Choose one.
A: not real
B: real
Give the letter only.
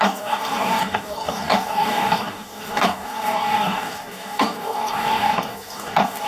A